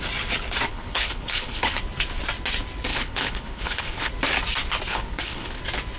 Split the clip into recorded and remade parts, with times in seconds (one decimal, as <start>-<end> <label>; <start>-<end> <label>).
0.0-0.7 recorded; 0.7-1.8 remade; 1.8-2.9 recorded; 2.9-4.1 remade; 4.1-4.9 recorded; 4.9-5.6 remade; 5.6-6.0 recorded